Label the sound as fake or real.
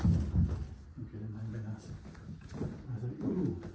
real